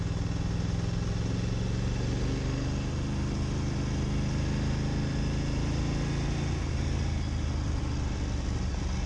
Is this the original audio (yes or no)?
yes